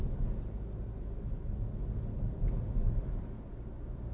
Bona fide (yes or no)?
yes